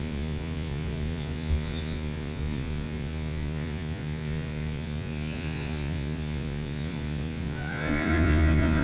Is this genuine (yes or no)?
no